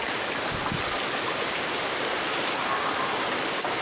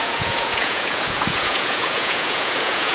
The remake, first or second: second